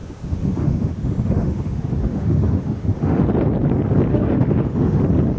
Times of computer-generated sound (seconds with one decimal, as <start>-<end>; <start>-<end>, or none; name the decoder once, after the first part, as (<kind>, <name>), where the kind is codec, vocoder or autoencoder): 0.0-3.2 (autoencoder, DAC-VAE); 4.1-5.0